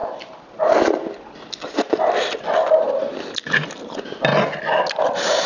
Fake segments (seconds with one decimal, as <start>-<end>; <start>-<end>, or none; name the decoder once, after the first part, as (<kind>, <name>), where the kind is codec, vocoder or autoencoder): 3.1-4.3 (vocoder, BigVGAN v2)